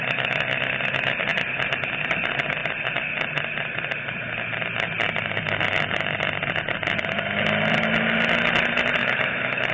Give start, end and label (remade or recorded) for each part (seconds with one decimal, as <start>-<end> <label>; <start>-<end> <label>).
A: 0.0-9.0 recorded; 9.0-9.7 remade